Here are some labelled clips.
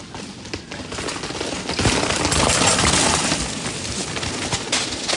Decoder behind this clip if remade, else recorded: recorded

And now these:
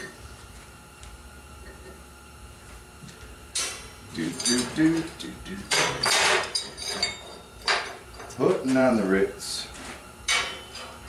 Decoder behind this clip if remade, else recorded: remade, vocoder, BigVGAN v2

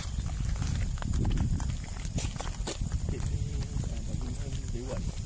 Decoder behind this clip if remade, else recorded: remade, vocoder, BigVGAN v2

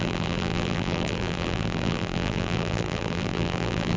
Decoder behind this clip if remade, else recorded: remade, vocoder, BigVGAN v2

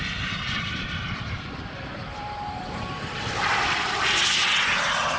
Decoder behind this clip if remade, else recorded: remade, vocoder, BigVGAN v2